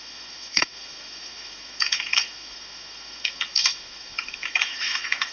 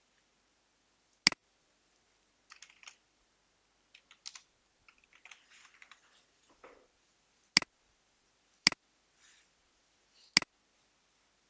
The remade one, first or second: first